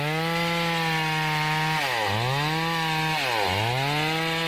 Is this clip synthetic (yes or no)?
no